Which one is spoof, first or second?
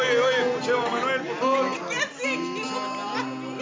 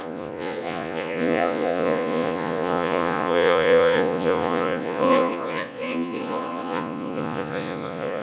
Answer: second